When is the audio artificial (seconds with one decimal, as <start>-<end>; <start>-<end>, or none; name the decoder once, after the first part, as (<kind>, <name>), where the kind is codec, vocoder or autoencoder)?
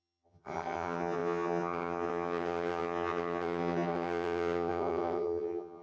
0.0-5.8 (vocoder, HiFi-GAN)